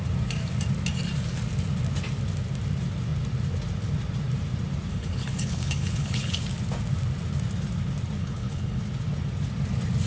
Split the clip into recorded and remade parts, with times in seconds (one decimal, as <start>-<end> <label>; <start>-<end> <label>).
0.0-4.9 recorded; 4.9-6.3 remade; 6.3-8.2 recorded; 8.2-8.8 remade; 8.8-10.1 recorded